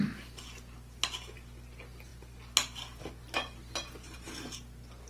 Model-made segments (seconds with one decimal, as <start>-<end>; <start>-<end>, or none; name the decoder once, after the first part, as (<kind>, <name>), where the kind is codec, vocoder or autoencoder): none